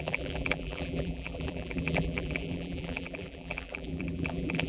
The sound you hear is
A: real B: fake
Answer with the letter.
B